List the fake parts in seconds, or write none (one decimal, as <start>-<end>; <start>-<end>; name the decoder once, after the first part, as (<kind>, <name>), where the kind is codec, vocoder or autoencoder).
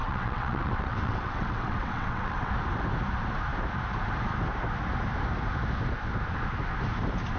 0.0-2.5 (vocoder, WaveNeXt)